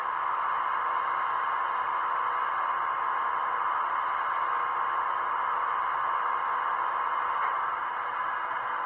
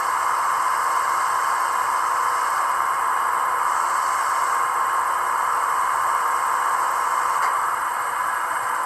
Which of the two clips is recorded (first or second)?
first